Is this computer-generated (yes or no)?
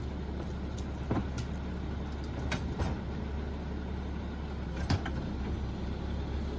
no